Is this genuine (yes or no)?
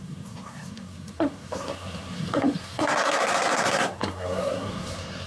no